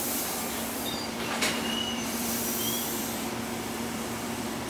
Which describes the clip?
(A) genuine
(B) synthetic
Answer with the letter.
B